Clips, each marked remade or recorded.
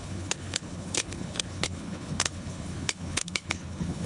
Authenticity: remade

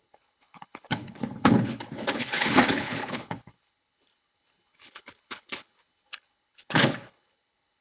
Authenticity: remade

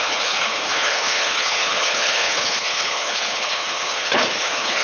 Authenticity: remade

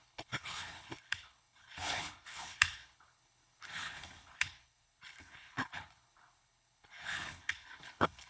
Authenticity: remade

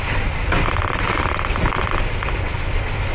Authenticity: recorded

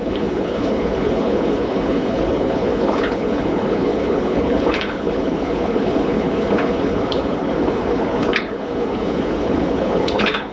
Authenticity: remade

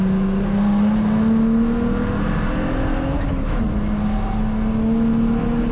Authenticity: recorded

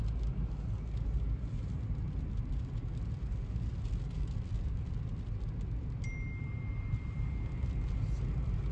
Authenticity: recorded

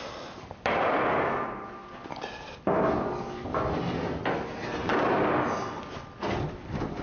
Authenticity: recorded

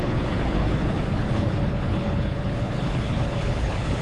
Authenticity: remade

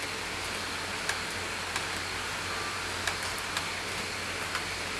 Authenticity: recorded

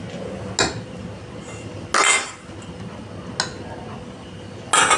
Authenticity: recorded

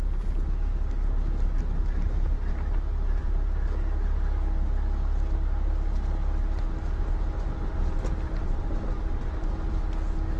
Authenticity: recorded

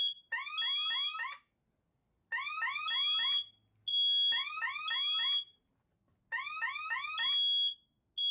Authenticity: recorded